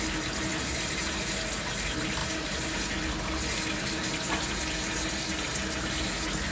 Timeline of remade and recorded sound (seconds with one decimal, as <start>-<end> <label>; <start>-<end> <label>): 0.0-6.5 recorded